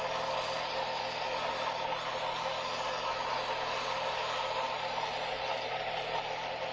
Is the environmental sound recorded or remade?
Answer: recorded